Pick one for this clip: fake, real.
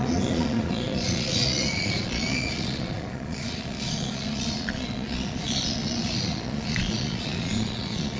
fake